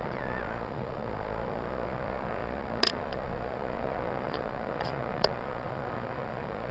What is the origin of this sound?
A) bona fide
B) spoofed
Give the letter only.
B